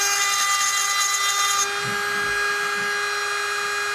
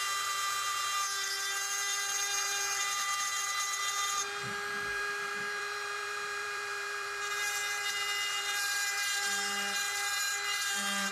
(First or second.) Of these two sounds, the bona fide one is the first